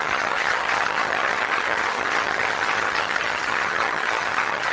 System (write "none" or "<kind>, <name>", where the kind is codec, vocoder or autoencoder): vocoder, HiFi-GAN